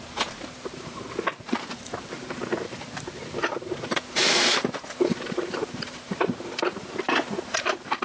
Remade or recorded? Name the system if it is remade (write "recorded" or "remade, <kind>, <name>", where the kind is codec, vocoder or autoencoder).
remade, vocoder, BigVGAN v2